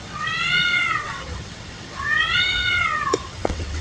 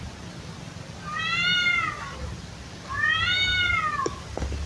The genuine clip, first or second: second